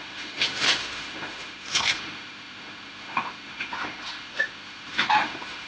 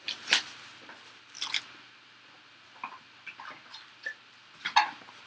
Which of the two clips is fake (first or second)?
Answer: first